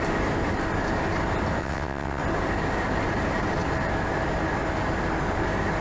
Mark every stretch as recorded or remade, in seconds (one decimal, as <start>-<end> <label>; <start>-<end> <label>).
0.0-1.6 recorded; 1.6-2.2 remade; 2.2-5.8 recorded